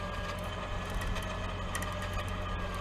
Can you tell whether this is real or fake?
real